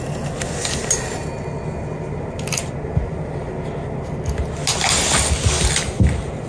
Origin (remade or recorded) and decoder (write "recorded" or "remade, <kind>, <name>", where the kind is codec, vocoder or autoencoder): recorded